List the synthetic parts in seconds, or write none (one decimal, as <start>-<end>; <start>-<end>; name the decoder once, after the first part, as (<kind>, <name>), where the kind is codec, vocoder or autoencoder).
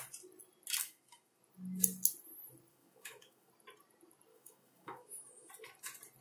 0.8-1.4 (autoencoder, DAC-VAE); 2.7-3.5; 4.3-5.5